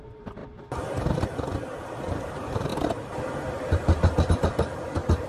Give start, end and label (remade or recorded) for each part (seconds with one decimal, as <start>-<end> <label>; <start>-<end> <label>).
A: 0.0-0.4 remade; 0.4-2.2 recorded; 2.2-5.3 remade